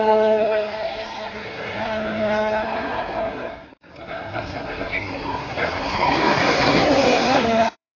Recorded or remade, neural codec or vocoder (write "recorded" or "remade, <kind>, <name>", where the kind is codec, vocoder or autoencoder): remade, codec, SNAC